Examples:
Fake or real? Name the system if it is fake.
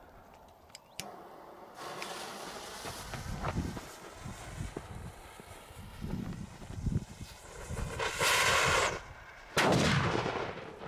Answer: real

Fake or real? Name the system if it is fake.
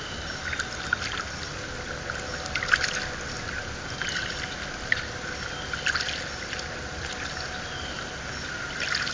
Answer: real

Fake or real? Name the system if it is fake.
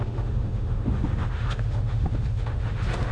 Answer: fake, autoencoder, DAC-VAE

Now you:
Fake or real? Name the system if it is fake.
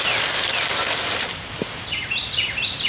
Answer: real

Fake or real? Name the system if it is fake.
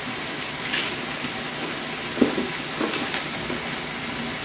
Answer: real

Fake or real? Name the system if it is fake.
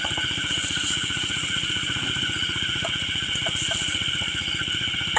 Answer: fake, vocoder, Vocos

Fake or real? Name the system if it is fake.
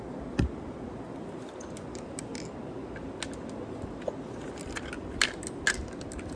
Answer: real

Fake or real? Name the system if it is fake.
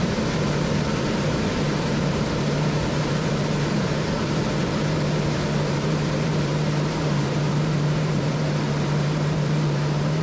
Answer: fake, vocoder, BigVGAN v2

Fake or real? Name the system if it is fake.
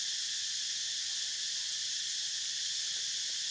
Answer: real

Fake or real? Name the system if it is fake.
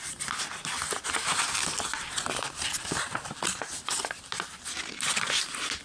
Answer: real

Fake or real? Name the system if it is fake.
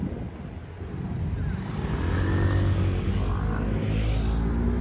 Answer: real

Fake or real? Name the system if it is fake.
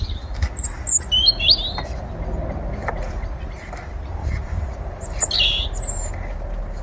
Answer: real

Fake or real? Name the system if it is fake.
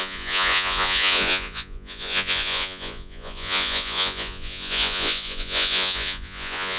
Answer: fake, vocoder, Vocos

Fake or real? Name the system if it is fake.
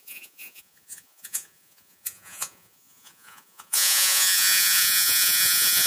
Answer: fake, vocoder, Vocos